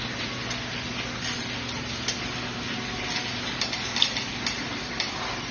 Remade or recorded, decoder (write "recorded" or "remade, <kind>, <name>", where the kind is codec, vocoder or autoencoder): recorded